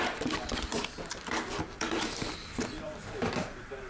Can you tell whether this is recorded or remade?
remade